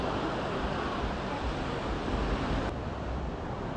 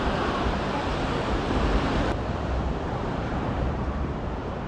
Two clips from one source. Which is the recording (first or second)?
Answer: first